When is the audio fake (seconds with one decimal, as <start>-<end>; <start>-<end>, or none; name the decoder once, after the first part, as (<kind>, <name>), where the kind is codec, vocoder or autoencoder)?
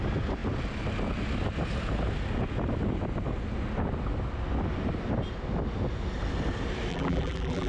6.9-7.7 (vocoder, BigVGAN v2)